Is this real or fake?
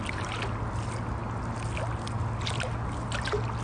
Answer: real